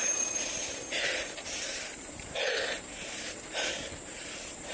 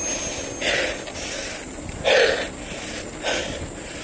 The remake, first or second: first